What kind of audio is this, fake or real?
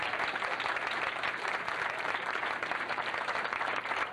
fake